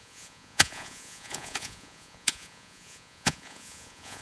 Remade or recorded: remade